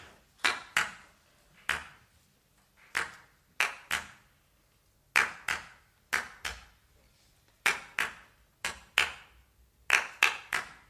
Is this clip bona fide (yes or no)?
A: yes